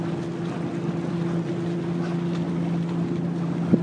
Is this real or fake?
real